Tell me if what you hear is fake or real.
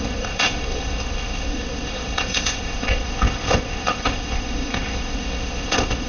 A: fake